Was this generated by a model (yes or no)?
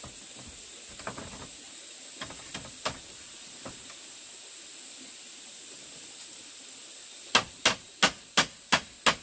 no